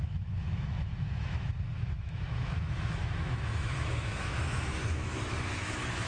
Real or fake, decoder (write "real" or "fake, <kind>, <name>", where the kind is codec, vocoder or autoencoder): fake, autoencoder, DAC-VAE